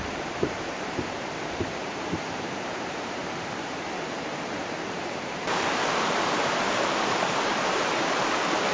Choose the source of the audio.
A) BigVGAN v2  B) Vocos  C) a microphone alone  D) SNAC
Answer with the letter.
A